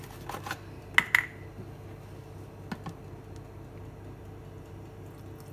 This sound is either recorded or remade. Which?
recorded